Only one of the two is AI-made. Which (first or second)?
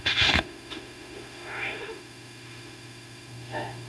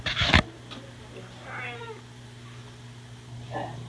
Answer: first